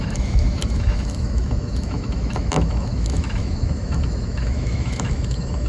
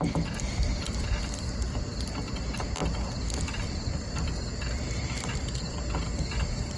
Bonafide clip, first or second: second